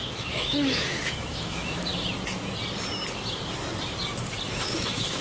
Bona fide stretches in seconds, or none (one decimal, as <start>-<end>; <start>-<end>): 1.9-4.5